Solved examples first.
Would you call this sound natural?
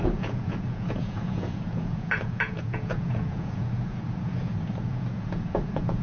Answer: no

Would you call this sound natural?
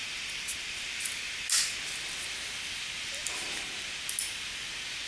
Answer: yes